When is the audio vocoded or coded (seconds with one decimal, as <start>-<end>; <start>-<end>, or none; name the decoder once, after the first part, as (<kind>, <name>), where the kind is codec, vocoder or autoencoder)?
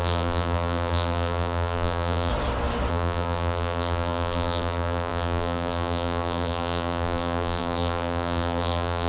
0.0-2.3 (vocoder, BigVGAN v2); 2.9-9.1